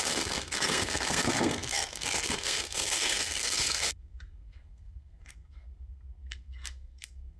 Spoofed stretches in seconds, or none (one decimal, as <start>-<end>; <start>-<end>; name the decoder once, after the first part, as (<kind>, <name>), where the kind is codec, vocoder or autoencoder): 0.0-7.4 (codec, SNAC)